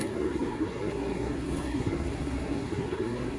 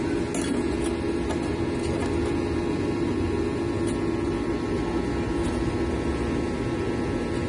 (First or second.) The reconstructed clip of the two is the first